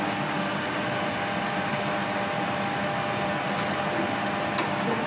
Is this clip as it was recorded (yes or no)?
yes